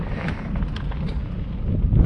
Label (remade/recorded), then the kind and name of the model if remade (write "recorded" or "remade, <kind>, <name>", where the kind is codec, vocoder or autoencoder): recorded